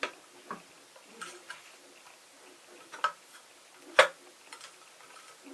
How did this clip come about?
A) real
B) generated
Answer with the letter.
A